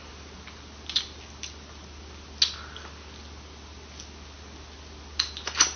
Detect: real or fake real